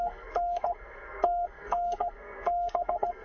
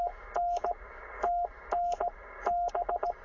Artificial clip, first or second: first